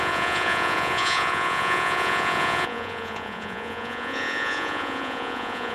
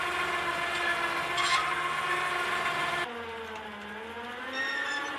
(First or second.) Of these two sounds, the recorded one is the second